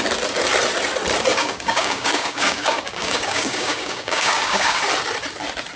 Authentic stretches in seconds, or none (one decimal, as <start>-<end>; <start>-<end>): 0.0-1.3; 4.8-5.8